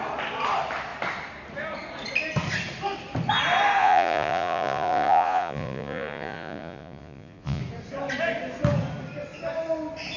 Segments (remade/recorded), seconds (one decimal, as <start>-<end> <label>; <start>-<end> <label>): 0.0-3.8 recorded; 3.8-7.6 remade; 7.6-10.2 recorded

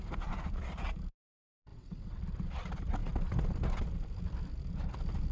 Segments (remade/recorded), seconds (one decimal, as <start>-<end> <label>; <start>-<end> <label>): 0.0-1.7 recorded; 1.7-2.2 remade; 2.2-5.3 recorded

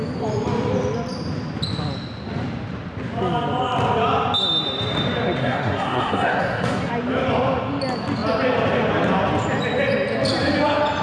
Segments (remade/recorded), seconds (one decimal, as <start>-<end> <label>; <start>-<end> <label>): 0.0-5.4 recorded; 5.4-6.9 remade; 6.9-11.0 recorded

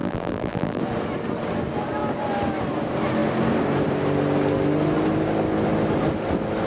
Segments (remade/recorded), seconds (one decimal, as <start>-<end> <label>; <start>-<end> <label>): 0.0-0.8 remade; 0.8-6.7 recorded

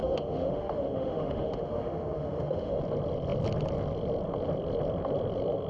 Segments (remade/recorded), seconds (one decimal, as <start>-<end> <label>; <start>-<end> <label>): 0.0-2.8 remade; 2.8-5.7 recorded

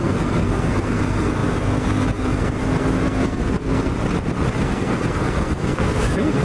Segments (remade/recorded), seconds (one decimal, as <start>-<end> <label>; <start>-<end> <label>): 0.0-3.9 remade; 3.9-4.6 recorded; 4.6-6.4 remade

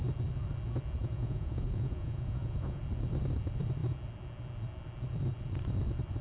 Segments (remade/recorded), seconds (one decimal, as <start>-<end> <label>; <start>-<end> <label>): 0.0-1.0 recorded; 1.0-2.8 remade; 2.8-6.2 recorded